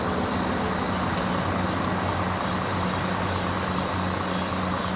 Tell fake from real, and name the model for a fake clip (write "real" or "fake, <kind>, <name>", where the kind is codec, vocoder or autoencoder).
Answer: real